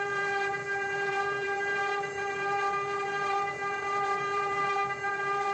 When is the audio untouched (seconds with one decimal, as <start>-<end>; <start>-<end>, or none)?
none